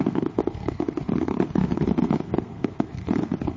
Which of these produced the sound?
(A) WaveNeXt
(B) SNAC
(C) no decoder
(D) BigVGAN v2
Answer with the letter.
B